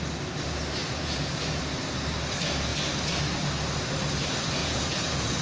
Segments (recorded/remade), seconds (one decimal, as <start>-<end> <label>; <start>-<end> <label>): 0.0-0.8 recorded; 0.8-1.6 remade; 1.6-4.6 recorded; 4.6-5.4 remade